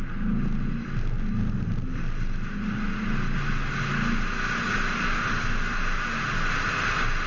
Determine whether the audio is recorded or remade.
recorded